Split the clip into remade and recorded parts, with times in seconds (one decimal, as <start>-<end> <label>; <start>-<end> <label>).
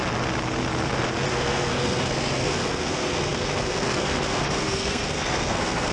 0.0-1.3 recorded; 1.3-5.9 remade